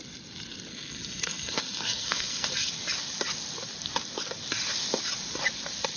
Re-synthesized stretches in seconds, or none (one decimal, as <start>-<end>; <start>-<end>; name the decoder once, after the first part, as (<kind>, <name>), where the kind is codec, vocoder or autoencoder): 0.7-2.7 (codec, SNAC)